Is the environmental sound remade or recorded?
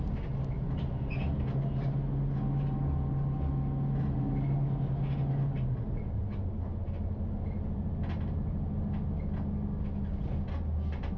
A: recorded